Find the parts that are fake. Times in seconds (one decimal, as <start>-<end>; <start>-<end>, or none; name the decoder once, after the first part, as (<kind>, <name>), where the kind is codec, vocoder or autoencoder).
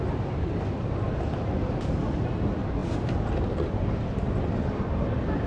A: none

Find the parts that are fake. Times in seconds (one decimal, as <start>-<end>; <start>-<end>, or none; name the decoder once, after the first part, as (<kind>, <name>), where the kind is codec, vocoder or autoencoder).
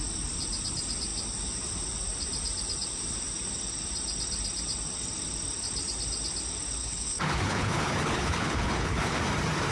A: 6.8-9.2 (codec, HILCodec)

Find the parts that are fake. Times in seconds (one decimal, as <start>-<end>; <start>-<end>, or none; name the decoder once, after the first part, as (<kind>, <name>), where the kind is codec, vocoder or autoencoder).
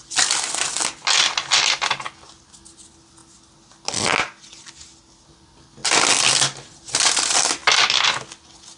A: none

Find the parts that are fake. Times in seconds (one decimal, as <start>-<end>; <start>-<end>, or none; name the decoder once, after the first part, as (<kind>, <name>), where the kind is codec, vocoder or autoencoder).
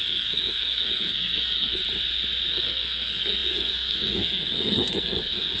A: 0.0-1.8 (codec, SNAC); 2.5-5.6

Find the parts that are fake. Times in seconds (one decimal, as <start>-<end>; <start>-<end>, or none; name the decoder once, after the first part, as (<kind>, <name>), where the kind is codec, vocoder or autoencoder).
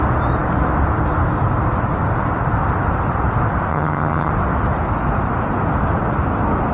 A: 3.7-4.3 (vocoder, HiFi-GAN)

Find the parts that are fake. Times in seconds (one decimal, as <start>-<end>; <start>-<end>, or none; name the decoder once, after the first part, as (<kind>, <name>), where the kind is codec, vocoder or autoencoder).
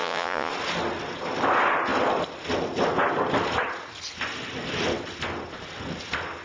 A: 0.0-0.5 (vocoder, Vocos)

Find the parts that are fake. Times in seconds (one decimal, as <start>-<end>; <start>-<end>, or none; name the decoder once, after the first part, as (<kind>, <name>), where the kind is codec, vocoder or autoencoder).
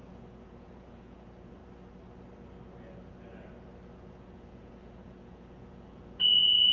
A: 0.0-1.6 (vocoder, Vocos); 4.2-6.7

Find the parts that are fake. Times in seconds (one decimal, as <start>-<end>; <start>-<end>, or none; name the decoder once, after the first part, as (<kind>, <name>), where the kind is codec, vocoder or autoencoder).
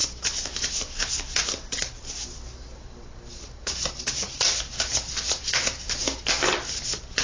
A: none